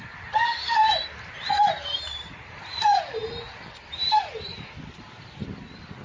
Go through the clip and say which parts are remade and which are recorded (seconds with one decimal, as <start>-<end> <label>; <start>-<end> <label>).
0.0-6.0 remade